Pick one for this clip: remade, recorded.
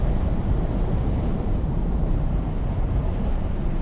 remade